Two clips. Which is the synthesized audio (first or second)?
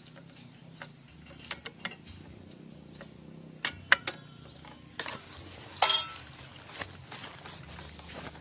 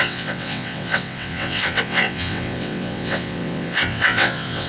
second